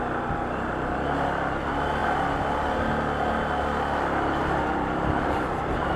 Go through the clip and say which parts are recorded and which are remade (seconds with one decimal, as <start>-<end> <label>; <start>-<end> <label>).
0.0-6.0 recorded